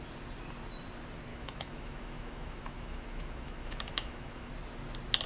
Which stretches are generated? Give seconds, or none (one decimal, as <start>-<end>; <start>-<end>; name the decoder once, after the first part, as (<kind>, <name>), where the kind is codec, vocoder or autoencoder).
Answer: 1.3-4.5 (autoencoder, DAC-VAE)